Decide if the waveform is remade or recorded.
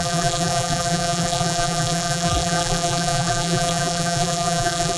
remade